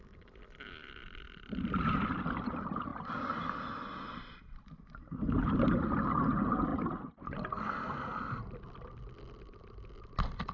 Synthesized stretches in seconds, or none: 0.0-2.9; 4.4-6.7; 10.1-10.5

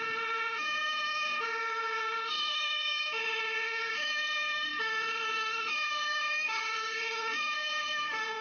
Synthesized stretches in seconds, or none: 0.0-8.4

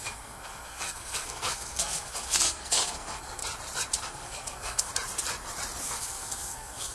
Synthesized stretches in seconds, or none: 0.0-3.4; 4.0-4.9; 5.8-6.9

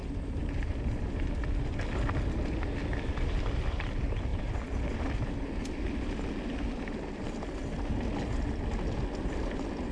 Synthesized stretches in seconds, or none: 0.0-2.0; 4.3-5.1

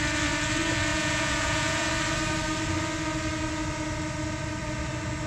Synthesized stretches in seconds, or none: 0.9-1.9